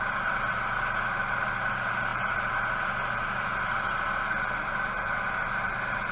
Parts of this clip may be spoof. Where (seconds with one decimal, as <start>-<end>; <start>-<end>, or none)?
0.0-6.1